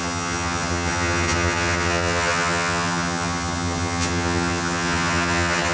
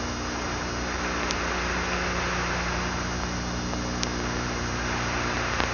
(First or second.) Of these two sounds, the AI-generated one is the first